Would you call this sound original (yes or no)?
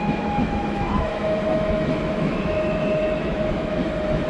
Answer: no